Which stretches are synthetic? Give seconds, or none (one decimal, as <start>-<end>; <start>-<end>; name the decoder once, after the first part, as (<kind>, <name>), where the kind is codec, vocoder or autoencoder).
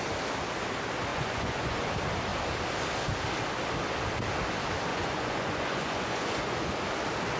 1.1-1.9 (vocoder, Vocos); 4.9-6.7